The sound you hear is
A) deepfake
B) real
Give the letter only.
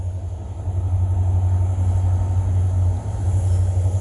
B